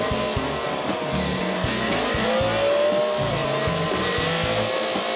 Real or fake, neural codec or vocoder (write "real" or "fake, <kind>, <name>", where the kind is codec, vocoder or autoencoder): real